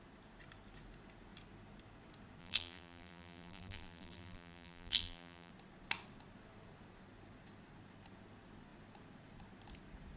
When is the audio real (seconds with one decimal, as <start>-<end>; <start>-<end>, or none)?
0.0-2.4; 5.5-10.2